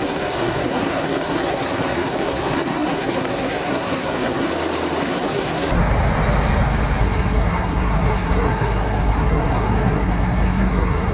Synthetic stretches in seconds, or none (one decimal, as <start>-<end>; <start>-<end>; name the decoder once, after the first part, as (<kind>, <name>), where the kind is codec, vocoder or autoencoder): 0.0-4.5 (codec, SNAC); 5.0-5.8; 7.0-11.1

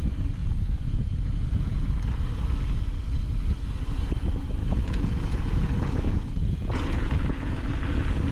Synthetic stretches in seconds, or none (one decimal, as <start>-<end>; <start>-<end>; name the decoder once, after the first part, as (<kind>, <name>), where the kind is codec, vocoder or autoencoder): 0.4-1.9 (vocoder, Vocos); 4.6-7.6

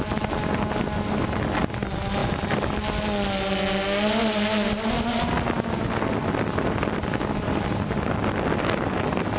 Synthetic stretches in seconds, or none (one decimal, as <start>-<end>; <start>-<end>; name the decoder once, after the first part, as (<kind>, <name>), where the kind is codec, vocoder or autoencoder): none

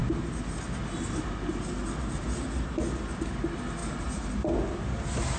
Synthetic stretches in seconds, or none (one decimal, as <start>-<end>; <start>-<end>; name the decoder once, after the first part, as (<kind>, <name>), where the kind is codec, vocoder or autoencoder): none

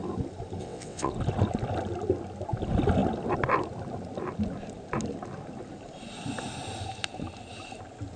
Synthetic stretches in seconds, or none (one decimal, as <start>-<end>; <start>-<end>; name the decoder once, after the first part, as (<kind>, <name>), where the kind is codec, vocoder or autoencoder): 0.6-1.1 (vocoder, WaveNeXt)

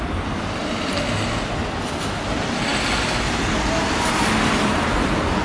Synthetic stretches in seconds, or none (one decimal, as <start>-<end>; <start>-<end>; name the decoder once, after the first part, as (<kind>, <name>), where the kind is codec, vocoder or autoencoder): none